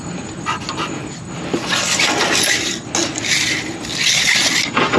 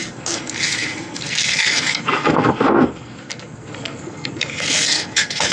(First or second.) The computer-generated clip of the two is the second